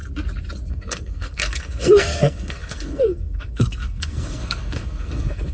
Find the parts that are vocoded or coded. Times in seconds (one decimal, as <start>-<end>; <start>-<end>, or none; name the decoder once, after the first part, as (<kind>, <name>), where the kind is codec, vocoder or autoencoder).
0.7-5.5 (codec, SNAC)